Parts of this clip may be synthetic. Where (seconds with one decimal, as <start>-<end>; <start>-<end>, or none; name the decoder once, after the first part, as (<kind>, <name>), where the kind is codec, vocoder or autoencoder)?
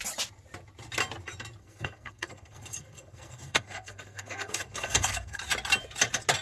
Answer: 1.6-5.4 (codec, SNAC)